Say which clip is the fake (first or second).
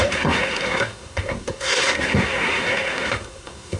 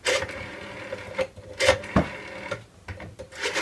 first